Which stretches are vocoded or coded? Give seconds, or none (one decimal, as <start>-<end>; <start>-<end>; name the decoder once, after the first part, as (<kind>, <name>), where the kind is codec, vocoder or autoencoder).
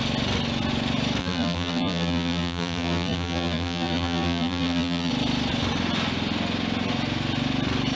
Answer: 1.2-5.1 (vocoder, BigVGAN v2)